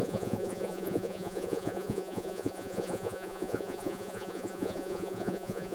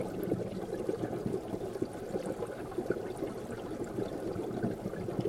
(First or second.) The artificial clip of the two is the first